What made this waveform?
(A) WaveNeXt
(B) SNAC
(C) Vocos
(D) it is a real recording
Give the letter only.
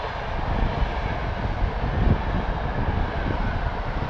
D